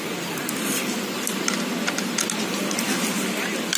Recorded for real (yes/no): yes